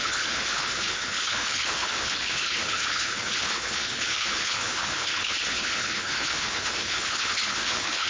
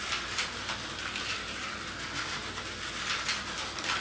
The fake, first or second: first